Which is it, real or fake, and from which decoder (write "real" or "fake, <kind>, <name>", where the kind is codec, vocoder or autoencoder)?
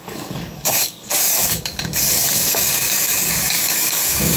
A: fake, codec, DAC